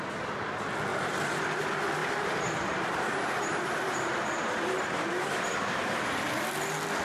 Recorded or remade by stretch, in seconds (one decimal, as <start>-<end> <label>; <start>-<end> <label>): 0.0-0.9 recorded; 0.9-1.6 remade; 1.6-2.0 recorded; 2.0-6.2 remade; 6.2-7.0 recorded